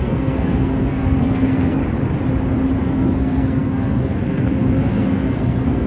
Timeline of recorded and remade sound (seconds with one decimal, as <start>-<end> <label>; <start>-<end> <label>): 0.0-1.8 remade; 1.8-2.8 recorded; 2.8-5.9 remade